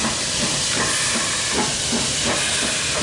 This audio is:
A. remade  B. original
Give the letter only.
B